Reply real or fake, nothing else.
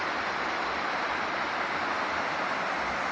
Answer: real